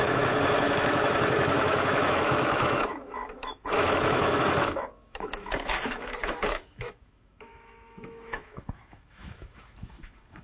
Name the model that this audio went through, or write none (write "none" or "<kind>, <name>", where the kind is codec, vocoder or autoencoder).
autoencoder, DAC-VAE